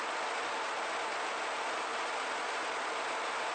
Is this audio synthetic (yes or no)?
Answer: no